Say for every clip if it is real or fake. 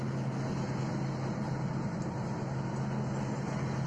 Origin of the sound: real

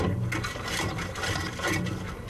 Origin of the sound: real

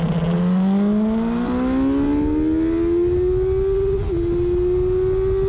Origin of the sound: real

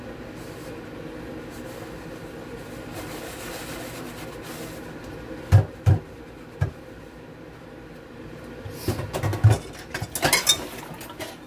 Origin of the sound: real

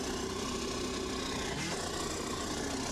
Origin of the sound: real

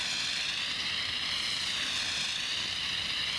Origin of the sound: fake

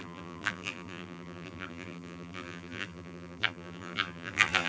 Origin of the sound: fake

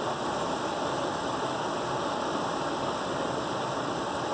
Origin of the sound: real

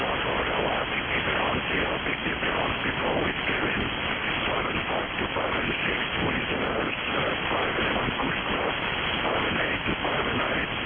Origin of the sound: real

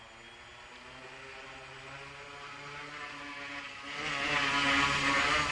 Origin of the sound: real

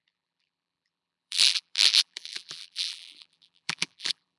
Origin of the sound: fake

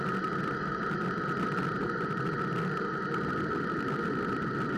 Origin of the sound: real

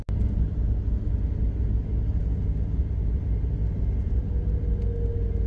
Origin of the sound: real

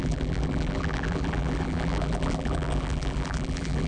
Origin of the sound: fake